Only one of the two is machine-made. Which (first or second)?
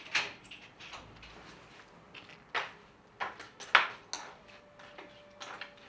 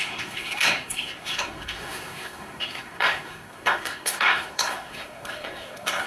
second